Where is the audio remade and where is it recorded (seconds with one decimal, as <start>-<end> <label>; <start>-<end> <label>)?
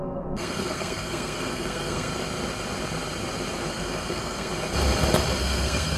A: 0.0-2.1 remade; 2.1-3.7 recorded; 3.7-4.5 remade; 4.5-5.4 recorded; 5.4-6.0 remade